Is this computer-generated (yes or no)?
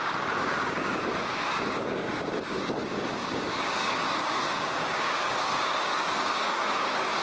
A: yes